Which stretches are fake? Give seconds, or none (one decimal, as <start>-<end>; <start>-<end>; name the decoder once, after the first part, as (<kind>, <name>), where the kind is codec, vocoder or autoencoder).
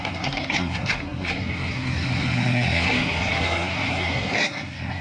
0.0-5.0 (codec, SNAC)